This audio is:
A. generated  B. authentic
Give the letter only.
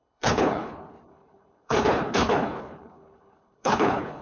A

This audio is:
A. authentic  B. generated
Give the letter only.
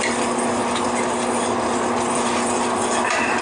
A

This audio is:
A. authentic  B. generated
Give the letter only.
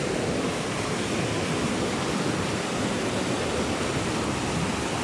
A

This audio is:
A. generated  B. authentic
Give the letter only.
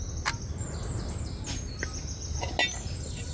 B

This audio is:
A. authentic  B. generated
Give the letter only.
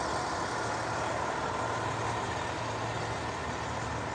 A